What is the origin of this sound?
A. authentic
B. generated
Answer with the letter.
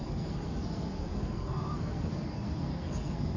B